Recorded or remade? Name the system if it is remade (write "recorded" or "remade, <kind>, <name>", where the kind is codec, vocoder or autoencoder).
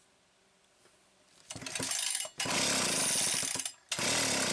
recorded